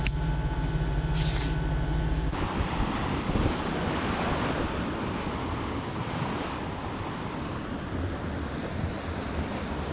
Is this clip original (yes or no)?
yes